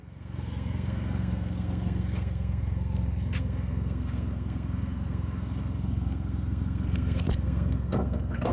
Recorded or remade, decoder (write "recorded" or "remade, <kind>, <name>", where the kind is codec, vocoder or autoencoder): remade, codec, SNAC